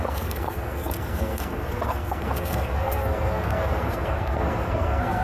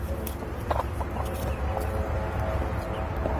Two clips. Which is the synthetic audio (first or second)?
first